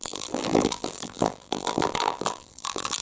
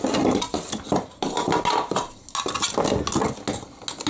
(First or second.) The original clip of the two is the second